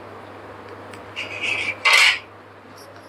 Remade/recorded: recorded